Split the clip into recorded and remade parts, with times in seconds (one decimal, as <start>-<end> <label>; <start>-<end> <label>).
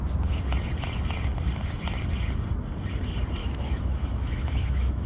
0.0-3.4 recorded; 3.4-5.1 remade